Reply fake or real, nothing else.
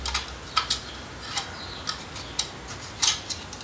real